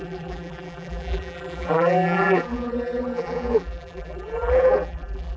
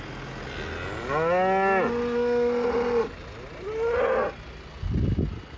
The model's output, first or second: first